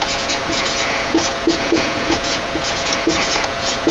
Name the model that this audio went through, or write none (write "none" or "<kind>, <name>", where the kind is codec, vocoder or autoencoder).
vocoder, Vocos